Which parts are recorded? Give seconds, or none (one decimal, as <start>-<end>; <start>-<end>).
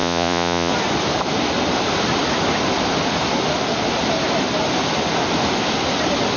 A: 0.7-6.4